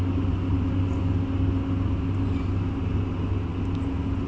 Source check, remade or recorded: recorded